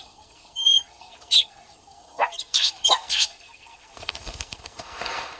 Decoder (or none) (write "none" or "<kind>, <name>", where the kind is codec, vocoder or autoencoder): codec, SNAC